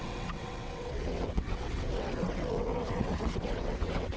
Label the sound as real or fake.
fake